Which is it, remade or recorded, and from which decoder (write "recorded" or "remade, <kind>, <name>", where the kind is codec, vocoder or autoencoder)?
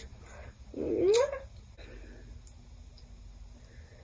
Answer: recorded